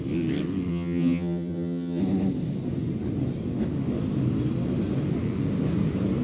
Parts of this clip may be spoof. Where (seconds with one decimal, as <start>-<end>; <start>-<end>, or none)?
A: 0.7-2.0

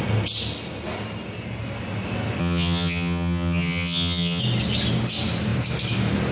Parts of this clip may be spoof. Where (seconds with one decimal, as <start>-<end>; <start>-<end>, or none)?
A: 2.4-4.4

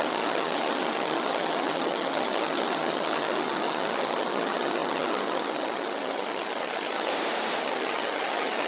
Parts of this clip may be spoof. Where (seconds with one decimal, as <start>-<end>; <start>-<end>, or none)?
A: 0.0-7.1; 7.6-8.7

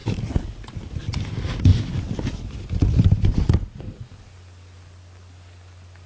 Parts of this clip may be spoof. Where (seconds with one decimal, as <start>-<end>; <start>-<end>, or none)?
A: none

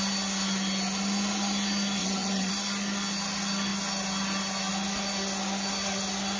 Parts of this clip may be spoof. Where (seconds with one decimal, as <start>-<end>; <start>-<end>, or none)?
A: 2.0-2.5

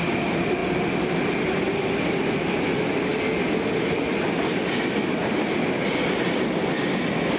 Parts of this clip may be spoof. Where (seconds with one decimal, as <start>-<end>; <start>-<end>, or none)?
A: none

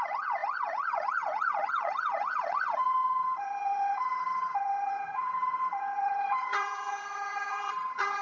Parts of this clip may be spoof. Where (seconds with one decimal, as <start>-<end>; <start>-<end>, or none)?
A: 0.0-8.2